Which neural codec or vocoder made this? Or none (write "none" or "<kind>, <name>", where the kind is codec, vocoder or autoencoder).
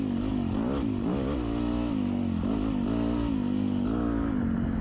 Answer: none